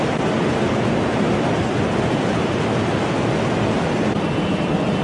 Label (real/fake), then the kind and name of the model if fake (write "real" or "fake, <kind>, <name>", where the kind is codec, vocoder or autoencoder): real